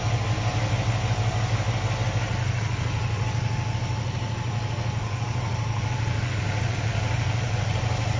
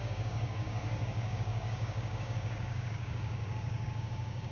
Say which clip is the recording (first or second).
first